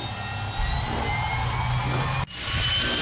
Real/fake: real